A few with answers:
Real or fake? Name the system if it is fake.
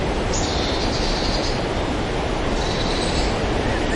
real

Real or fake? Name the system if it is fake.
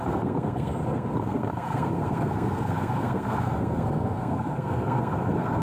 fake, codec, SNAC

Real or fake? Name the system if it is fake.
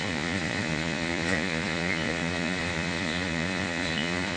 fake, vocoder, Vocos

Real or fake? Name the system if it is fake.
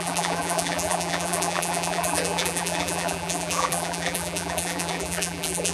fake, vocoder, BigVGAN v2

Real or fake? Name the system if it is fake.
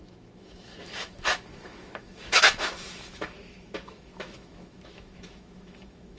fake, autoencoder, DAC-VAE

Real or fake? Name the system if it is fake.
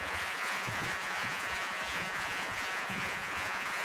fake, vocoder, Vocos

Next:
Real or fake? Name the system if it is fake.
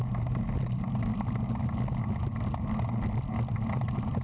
real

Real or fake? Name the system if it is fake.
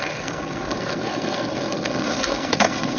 fake, codec, SNAC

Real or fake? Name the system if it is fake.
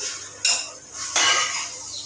real